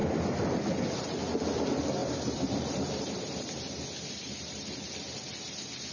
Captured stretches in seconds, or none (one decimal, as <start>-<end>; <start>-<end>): 0.0-2.0; 5.5-5.9